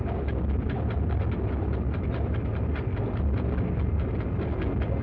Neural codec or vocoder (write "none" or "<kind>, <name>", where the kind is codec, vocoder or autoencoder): none